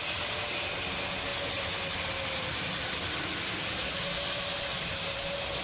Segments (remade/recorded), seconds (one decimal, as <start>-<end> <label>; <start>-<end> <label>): 0.0-5.6 recorded